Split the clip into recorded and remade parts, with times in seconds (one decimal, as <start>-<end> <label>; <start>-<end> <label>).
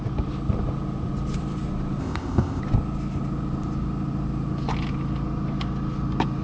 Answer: 0.0-2.0 recorded; 2.0-2.6 remade; 2.6-6.4 recorded